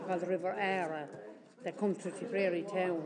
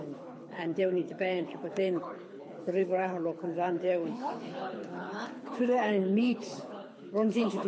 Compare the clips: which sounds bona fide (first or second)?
first